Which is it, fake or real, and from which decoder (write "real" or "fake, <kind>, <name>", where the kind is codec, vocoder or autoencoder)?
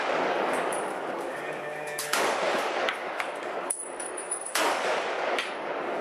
fake, codec, DAC